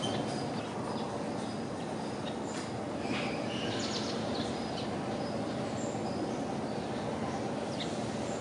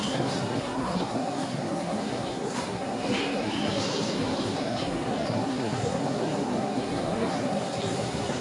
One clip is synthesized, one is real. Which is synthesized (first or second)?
second